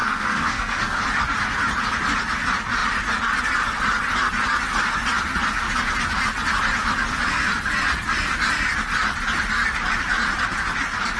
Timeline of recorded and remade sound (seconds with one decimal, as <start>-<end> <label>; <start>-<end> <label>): 0.0-1.0 remade; 1.0-11.2 recorded